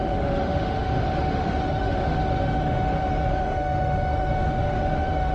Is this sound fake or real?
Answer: fake